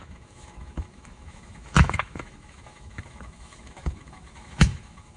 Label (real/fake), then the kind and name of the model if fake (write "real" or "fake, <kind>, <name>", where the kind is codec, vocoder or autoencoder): fake, autoencoder, DAC-VAE